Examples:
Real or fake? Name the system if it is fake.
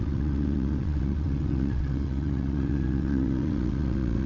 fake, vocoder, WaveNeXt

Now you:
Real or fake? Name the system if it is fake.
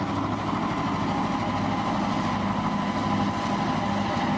real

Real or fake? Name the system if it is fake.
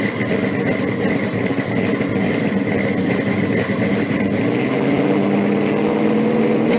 real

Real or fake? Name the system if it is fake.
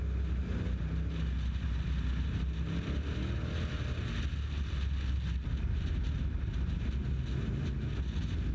real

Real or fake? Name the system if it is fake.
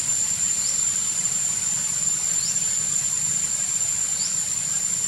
fake, vocoder, BigVGAN v2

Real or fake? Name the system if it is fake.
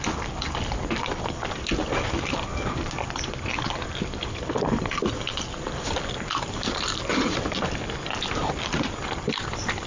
real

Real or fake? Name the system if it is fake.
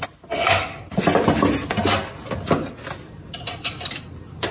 real